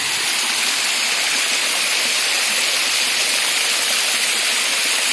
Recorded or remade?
recorded